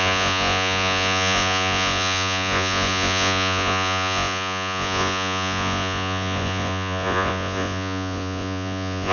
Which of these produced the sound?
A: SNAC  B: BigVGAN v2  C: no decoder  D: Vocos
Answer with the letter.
D